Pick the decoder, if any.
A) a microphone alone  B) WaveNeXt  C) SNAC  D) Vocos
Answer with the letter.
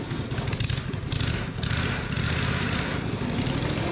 A